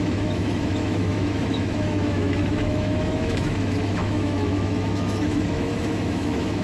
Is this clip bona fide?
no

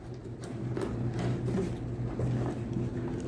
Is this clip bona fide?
yes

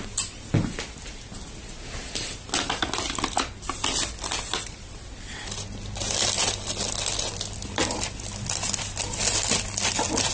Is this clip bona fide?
yes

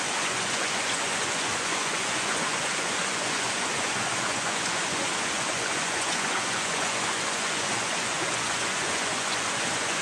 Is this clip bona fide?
no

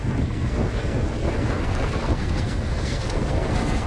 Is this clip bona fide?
no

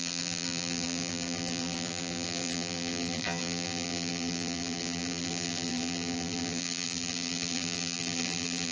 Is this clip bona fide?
no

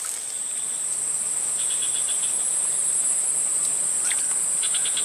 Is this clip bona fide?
yes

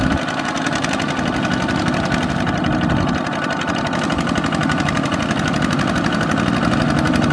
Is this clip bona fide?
yes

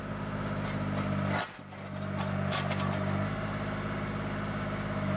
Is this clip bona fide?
yes